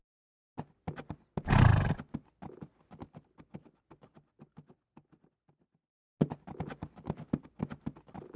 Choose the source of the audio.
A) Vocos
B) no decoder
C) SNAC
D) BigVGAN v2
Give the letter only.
B